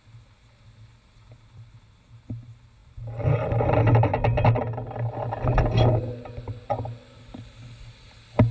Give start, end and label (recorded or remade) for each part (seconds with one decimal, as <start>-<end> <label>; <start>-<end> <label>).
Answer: 0.0-8.5 recorded